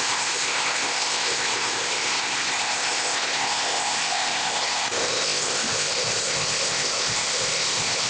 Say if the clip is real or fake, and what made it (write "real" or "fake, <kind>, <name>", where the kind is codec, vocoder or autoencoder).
fake, codec, ZipCodec